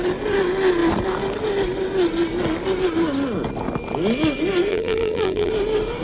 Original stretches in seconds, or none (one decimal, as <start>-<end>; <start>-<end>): 0.0-4.7; 5.5-6.0